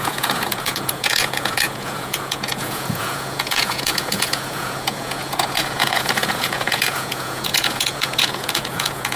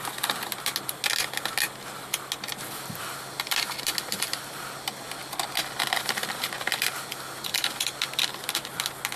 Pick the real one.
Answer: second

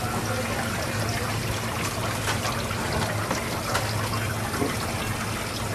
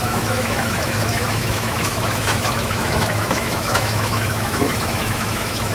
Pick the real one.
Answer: first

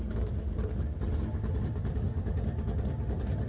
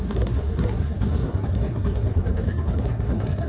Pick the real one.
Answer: first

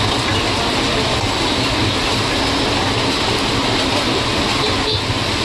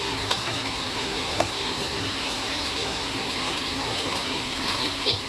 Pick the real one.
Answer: first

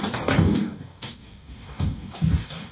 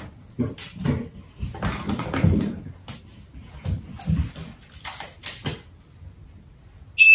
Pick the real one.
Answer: second